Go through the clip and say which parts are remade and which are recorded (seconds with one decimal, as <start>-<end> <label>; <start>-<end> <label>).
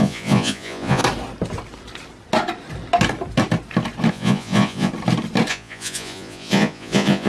0.0-1.0 remade; 1.0-4.1 recorded; 4.1-4.9 remade; 4.9-5.5 recorded; 5.5-7.3 remade